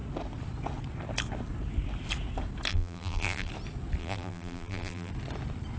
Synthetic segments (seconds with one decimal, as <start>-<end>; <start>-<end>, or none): 2.7-3.5; 4.0-5.1